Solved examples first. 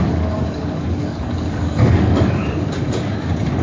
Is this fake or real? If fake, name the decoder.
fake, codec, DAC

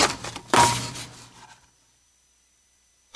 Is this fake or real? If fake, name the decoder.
fake, vocoder, BigVGAN v2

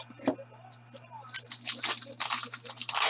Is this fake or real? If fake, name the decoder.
real